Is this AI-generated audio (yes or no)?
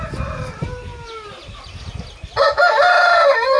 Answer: no